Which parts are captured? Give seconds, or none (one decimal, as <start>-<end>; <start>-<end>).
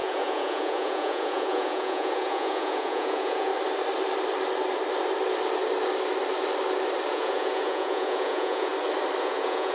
3.5-7.1; 8.7-9.2